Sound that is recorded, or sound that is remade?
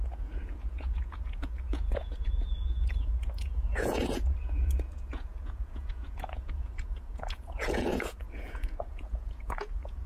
remade